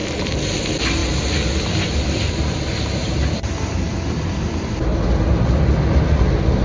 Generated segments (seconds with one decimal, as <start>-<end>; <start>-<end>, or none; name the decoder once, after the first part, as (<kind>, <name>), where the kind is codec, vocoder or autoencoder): 0.0-0.6 (vocoder, BigVGAN v2); 1.0-5.0